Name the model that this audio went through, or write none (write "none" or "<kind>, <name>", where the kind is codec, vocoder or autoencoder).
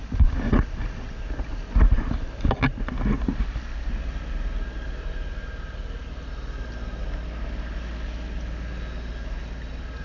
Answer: none